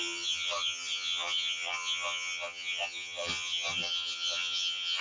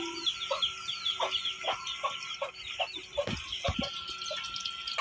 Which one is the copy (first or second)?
first